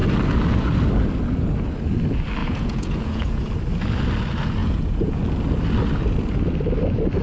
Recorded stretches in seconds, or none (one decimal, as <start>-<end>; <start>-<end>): 0.0-2.4; 3.5-4.6; 5.2-7.2